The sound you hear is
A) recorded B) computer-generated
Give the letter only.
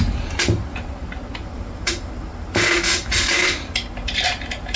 A